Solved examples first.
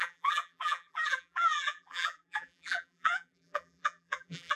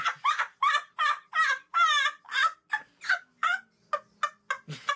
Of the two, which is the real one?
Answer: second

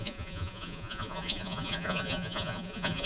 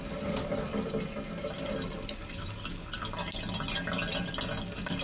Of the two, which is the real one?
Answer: second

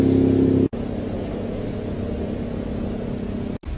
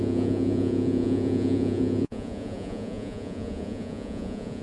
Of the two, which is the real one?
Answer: first